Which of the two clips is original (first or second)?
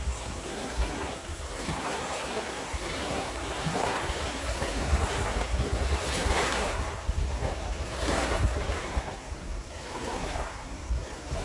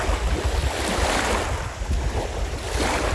second